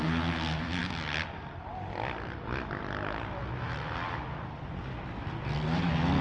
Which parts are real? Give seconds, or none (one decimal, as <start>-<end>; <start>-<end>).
0.0-6.2